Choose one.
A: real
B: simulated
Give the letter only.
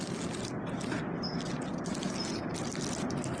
A